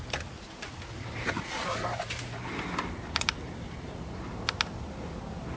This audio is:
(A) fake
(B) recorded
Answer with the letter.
B